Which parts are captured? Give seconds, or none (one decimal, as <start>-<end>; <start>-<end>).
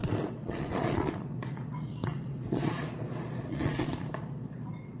none